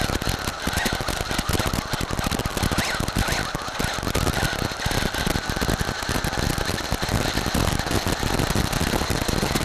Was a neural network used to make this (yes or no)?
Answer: no